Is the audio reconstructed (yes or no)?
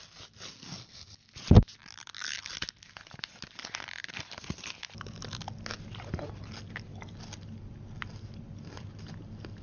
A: no